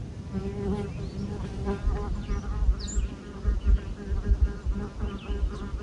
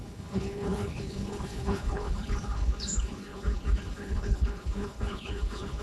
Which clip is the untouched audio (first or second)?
first